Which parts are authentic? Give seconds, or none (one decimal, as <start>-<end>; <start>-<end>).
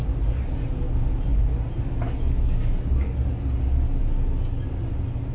0.0-5.3